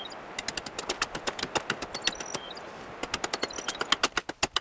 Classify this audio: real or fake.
real